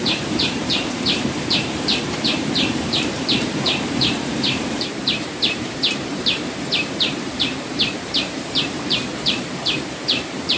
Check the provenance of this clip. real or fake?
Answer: fake